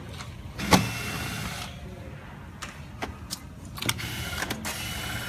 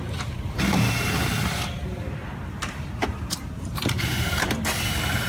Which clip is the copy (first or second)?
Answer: second